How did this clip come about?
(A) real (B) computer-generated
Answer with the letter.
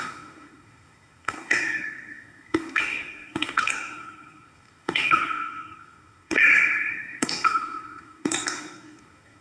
B